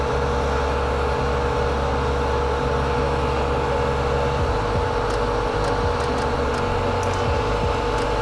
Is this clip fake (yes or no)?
no